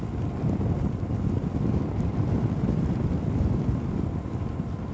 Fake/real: real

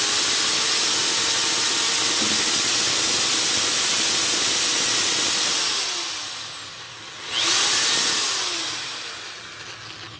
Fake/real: real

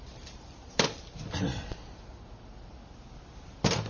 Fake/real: real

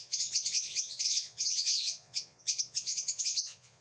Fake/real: fake